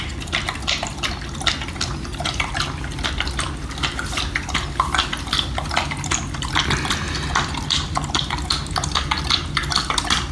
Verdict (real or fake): real